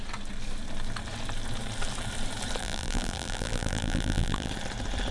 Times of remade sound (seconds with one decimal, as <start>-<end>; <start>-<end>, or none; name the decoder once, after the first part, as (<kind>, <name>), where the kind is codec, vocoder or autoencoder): 2.6-4.5 (vocoder, BigVGAN v2)